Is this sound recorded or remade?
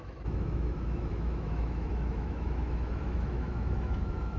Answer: remade